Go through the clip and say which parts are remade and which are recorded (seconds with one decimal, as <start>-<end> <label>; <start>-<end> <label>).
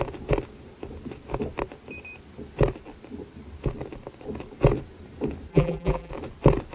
0.0-5.5 recorded; 5.5-6.1 remade; 6.1-6.7 recorded